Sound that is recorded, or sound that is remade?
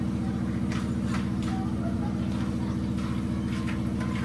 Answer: recorded